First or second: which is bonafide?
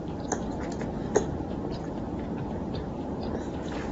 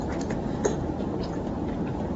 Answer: first